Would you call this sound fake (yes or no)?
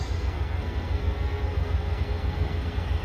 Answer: yes